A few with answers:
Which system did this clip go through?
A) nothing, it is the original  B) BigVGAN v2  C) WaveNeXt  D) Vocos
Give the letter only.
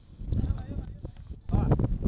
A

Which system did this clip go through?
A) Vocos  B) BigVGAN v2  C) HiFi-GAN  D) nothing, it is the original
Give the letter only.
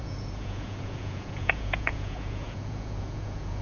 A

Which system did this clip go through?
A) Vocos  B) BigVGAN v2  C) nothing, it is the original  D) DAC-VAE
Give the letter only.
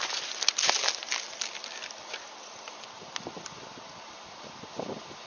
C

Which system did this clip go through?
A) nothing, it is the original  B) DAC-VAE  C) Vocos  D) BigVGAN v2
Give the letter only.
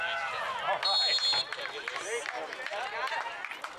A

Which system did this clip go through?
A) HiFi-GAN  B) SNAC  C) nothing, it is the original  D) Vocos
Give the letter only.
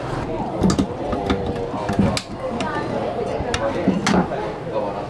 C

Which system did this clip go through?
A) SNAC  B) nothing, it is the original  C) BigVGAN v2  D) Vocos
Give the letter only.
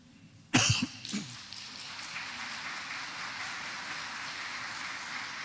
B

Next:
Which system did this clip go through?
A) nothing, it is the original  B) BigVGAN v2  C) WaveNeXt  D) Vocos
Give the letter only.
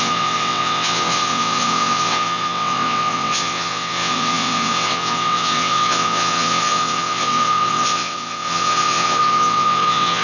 C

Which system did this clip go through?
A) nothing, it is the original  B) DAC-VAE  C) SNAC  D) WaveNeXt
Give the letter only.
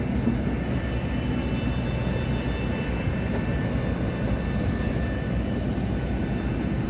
A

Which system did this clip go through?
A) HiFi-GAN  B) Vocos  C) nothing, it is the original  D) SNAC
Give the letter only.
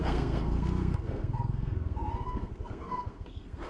D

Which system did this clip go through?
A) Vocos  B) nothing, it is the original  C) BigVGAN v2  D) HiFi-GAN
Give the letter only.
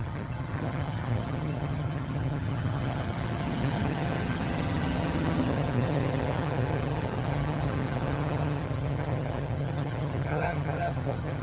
D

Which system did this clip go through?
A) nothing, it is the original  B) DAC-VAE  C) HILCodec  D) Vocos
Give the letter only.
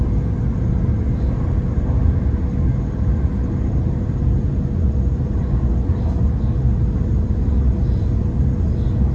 A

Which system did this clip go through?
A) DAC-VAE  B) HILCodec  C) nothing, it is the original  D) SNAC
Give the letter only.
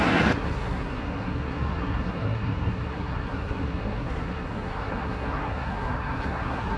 D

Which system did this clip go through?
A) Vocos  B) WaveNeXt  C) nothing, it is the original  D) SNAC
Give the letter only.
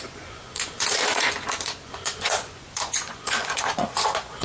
A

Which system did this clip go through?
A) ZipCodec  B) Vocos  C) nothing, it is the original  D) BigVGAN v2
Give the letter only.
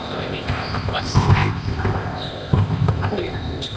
A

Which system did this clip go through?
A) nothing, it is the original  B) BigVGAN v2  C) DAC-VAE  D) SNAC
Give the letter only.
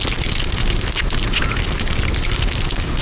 A